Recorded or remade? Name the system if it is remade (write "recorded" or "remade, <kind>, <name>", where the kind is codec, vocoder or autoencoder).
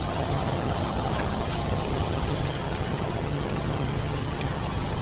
remade, vocoder, HiFi-GAN